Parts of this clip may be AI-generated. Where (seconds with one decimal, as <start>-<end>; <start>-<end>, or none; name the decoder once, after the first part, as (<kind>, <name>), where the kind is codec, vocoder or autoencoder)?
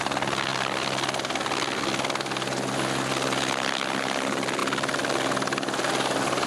none